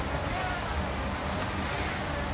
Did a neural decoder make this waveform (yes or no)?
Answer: no